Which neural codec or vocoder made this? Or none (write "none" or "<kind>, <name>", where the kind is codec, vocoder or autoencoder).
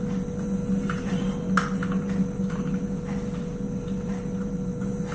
none